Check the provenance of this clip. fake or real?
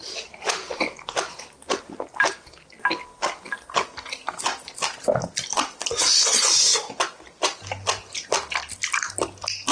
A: real